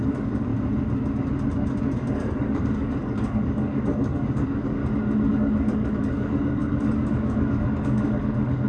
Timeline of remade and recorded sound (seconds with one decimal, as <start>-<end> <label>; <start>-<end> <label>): 0.0-0.5 remade; 0.5-1.8 recorded; 1.8-4.8 remade; 4.8-5.3 recorded; 5.3-8.7 remade